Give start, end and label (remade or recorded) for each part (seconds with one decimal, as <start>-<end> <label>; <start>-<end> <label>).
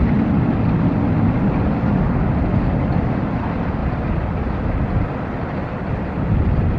0.0-6.8 recorded